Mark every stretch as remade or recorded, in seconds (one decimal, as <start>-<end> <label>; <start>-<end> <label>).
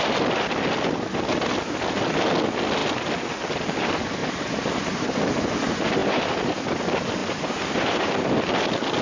0.0-4.2 recorded; 4.2-5.2 remade; 5.2-6.0 recorded; 6.0-6.8 remade; 6.8-7.2 recorded; 7.2-8.1 remade; 8.1-9.0 recorded